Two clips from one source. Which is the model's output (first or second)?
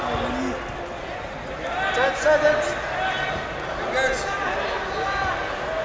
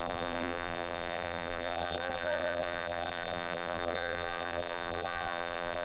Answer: second